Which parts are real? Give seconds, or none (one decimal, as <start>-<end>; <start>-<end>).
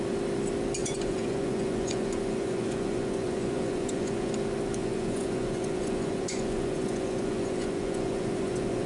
0.0-0.8; 4.3-4.8